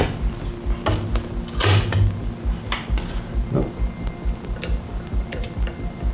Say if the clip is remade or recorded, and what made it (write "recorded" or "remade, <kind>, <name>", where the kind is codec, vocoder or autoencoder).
recorded